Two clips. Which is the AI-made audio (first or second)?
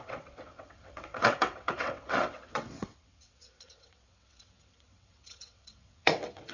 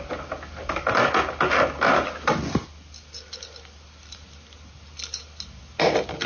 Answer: first